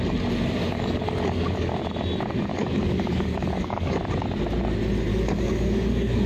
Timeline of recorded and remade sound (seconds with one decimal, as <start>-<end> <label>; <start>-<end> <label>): 0.0-0.6 recorded; 0.6-1.8 remade; 1.8-2.5 recorded; 2.5-4.0 remade; 4.0-5.1 recorded; 5.1-6.3 remade

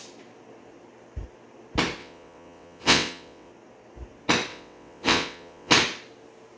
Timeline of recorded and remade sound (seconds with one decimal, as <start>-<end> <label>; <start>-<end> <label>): 0.0-2.0 recorded; 2.0-3.5 remade; 3.5-4.5 recorded; 4.5-5.7 remade; 5.7-6.6 recorded

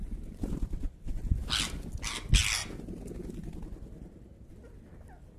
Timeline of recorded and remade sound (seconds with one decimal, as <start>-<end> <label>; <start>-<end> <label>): 0.0-5.4 recorded

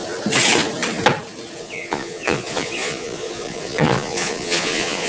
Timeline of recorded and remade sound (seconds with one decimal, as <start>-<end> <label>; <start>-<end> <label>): 0.0-1.6 recorded; 1.6-5.1 remade

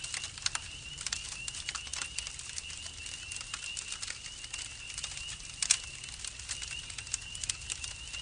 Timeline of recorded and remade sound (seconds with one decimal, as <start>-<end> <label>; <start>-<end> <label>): 0.0-8.2 recorded

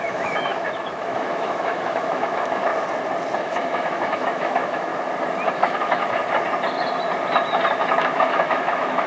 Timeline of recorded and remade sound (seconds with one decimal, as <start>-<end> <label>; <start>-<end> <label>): 0.0-2.7 remade; 2.7-3.4 recorded; 3.4-4.9 remade; 4.9-5.5 recorded; 5.5-6.2 remade; 6.2-7.9 recorded; 7.9-9.1 remade

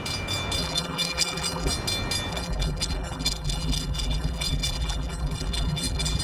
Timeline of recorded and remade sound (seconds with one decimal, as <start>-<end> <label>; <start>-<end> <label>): 0.0-0.6 recorded; 0.6-1.7 remade; 1.7-2.3 recorded; 2.3-6.2 remade

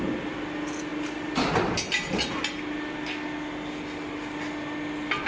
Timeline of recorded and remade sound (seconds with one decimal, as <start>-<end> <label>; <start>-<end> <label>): 0.0-5.3 recorded